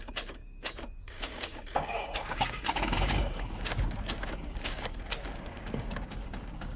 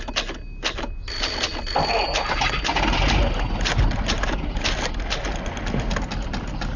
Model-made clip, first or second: first